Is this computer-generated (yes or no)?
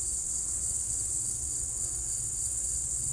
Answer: yes